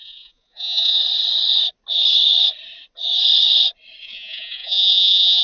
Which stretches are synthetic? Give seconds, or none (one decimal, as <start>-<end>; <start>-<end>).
0.0-1.0; 4.0-5.4